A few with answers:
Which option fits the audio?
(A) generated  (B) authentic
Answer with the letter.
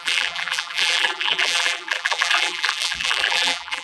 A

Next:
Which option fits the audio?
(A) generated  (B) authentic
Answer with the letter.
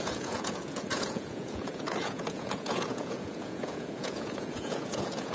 A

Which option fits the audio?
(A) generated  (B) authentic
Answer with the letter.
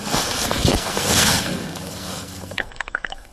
A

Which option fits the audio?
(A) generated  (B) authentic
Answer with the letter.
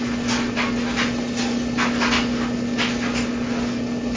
B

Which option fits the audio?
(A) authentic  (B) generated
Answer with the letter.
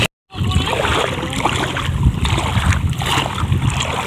A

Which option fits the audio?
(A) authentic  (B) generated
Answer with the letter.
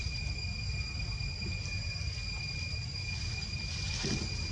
A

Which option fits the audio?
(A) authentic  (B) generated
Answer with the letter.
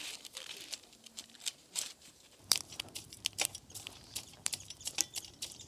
B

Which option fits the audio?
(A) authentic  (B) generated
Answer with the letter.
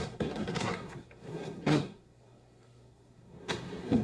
B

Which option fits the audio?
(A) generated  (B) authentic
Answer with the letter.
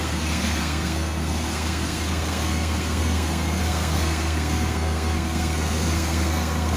A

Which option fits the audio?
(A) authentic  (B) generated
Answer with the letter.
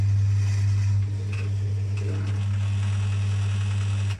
A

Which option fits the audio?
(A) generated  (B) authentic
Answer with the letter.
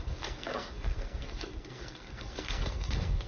A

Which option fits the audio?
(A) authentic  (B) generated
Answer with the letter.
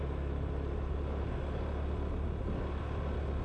A